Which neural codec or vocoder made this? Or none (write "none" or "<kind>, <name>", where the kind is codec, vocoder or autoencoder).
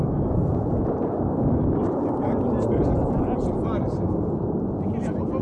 none